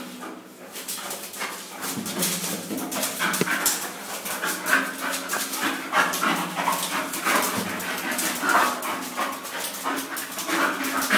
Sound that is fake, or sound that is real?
real